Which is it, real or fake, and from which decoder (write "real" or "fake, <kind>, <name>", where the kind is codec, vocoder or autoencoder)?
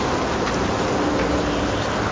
real